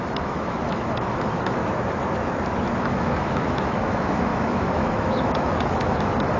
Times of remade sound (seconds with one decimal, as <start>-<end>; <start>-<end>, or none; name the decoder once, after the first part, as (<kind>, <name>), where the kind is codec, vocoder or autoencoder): 0.0-1.6 (autoencoder, DAC-VAE); 2.8-6.4